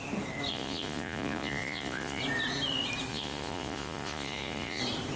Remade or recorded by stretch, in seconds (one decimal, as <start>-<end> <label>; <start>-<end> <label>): 0.0-0.5 recorded; 0.5-2.2 remade; 2.2-3.1 recorded; 3.1-4.8 remade; 4.8-5.2 recorded